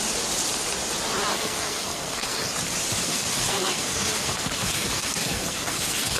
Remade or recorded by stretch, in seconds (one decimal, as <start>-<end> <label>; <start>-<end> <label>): 0.0-1.3 recorded; 1.3-2.5 remade; 2.5-3.0 recorded; 3.0-6.2 remade